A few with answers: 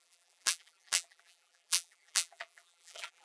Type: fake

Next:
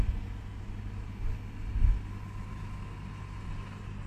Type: real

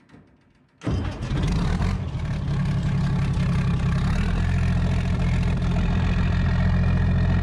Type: real